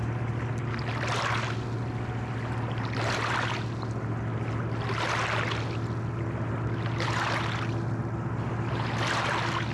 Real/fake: real